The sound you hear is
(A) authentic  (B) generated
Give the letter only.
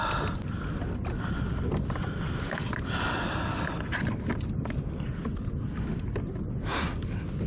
A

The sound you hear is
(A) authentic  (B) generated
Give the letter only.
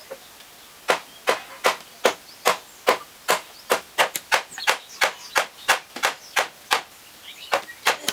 A